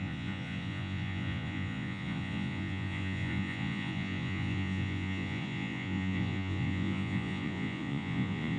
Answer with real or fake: fake